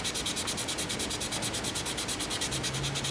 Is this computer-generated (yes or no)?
no